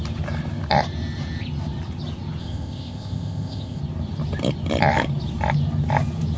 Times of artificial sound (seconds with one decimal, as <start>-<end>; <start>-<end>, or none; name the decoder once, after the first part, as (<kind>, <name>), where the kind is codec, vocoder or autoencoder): 2.4-3.8 (codec, ZipCodec)